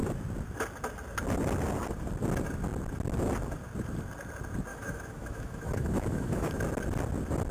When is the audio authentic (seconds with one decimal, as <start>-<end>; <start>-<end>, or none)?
0.0-4.7; 6.5-7.5